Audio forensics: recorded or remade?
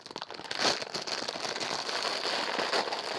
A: recorded